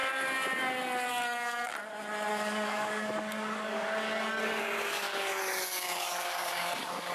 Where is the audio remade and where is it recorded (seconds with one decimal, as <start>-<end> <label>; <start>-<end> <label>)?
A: 0.0-1.1 recorded; 1.1-1.7 remade; 1.7-2.3 recorded; 2.3-7.1 remade